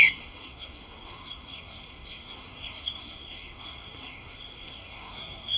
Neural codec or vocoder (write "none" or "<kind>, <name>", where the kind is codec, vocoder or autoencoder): codec, SNAC